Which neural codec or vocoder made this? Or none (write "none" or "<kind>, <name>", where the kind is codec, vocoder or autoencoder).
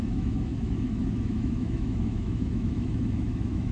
autoencoder, DAC-VAE